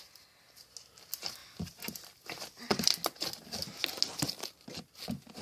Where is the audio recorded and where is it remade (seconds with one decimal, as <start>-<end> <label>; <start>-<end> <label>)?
0.0-5.4 recorded